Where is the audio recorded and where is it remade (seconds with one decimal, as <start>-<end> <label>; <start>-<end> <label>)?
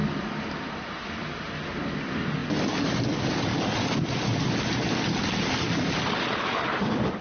0.0-7.2 recorded